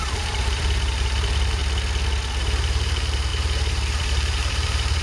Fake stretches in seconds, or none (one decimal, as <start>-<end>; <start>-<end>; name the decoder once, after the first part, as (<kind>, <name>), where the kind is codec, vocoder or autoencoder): 0.0-1.6 (vocoder, BigVGAN v2); 2.4-5.0